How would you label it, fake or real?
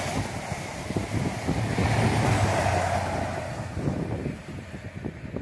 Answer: real